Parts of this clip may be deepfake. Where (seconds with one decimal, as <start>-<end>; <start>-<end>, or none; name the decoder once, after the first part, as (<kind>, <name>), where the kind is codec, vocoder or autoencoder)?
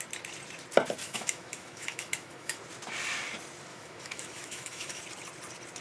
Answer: 1.0-2.6 (autoencoder, DAC-VAE); 3.7-5.0